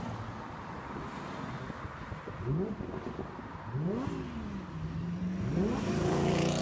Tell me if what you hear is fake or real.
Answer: real